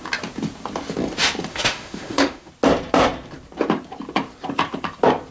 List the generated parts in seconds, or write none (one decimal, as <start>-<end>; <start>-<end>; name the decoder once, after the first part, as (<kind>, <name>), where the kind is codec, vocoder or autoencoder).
1.5-2.5 (autoencoder, DAC-VAE)